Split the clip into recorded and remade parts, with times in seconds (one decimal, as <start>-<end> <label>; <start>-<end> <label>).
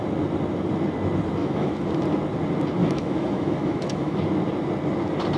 0.0-1.4 recorded; 1.4-1.9 remade; 1.9-2.8 recorded; 2.8-4.2 remade; 4.2-5.4 recorded